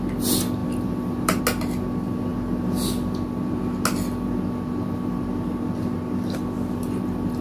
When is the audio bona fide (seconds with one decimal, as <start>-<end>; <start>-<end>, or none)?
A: 0.0-0.6; 1.4-7.4